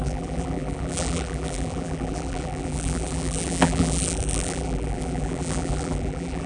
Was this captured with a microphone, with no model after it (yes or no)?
no